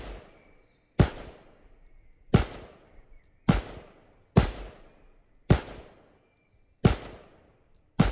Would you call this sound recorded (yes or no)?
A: yes